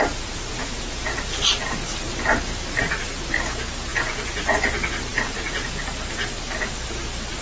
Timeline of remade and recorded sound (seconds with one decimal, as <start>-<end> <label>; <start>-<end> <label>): 0.0-0.6 recorded; 0.6-1.2 remade; 1.2-3.9 recorded; 3.9-4.6 remade; 4.6-5.1 recorded; 5.1-5.8 remade; 5.8-7.4 recorded